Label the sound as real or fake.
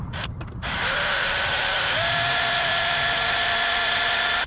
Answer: fake